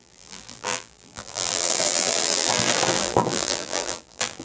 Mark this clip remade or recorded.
remade